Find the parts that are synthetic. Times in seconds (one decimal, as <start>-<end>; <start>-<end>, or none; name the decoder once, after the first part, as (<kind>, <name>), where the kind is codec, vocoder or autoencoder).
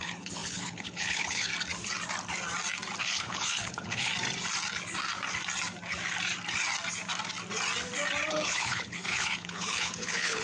0.0-1.5 (codec, HILCodec); 3.0-4.1; 8.3-10.4